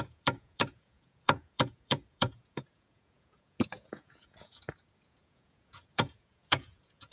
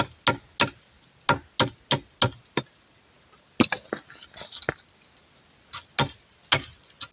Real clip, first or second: second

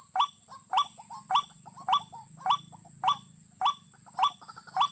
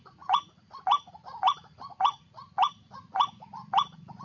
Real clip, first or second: first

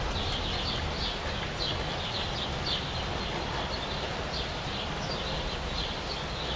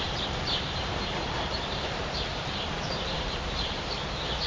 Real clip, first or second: first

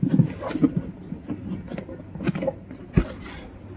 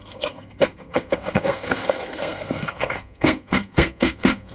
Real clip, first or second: first